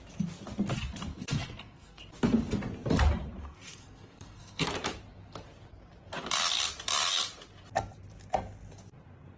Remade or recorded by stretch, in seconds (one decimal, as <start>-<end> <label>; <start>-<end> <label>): 0.0-1.1 recorded; 1.1-2.0 remade; 2.0-3.4 recorded; 3.4-4.7 remade; 4.7-9.4 recorded